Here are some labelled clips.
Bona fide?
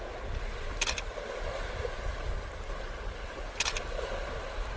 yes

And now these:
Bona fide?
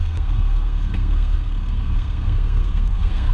no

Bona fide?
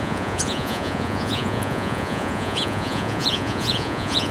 no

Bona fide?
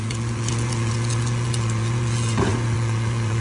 no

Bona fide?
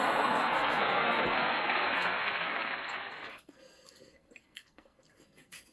no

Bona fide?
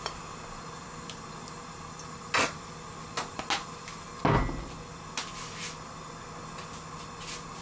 yes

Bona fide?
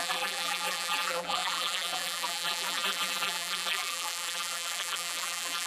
no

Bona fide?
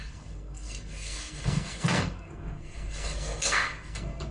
no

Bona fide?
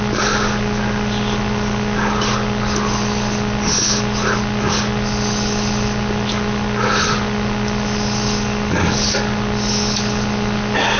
yes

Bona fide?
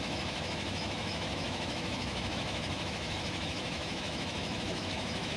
no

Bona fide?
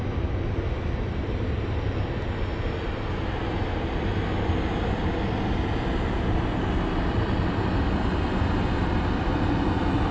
yes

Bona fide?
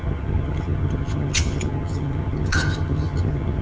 no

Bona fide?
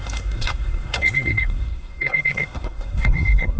no